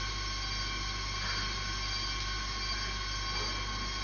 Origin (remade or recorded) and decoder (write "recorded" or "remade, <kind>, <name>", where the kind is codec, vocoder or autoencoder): recorded